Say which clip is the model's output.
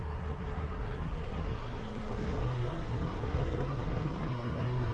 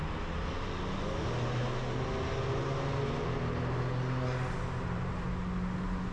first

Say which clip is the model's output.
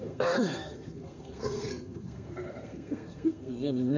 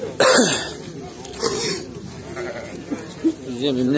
first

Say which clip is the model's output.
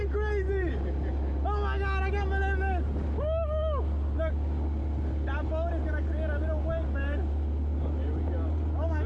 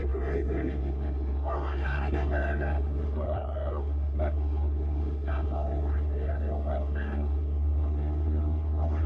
second